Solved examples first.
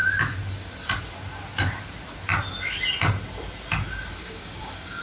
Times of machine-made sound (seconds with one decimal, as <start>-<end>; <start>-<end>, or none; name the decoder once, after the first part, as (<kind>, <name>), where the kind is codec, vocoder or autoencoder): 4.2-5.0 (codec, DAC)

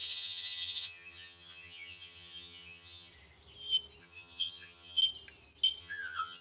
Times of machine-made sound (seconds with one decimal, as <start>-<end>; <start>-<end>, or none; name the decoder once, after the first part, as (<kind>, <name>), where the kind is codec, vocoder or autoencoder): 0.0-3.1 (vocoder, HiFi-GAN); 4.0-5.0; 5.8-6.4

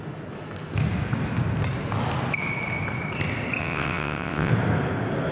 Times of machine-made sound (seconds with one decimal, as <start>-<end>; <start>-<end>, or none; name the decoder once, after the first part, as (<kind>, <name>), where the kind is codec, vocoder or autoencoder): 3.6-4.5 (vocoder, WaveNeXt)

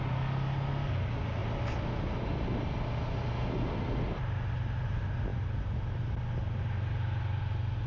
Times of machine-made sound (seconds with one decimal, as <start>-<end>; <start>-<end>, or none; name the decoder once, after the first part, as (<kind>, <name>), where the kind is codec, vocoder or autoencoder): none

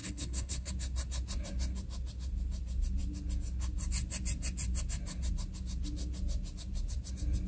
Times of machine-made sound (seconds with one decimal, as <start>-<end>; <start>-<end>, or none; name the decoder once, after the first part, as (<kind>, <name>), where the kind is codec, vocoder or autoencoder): 0.0-0.7 (codec, HILCodec)

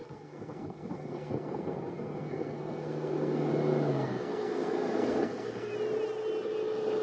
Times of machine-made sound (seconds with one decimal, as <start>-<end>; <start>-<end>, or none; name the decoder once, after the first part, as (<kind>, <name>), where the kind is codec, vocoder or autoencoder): 0.0-3.5 (codec, SNAC); 3.9-5.7